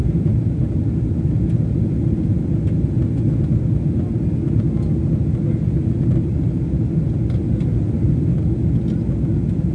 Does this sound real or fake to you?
real